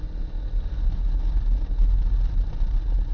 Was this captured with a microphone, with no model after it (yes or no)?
yes